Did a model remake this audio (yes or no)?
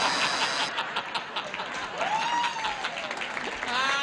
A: no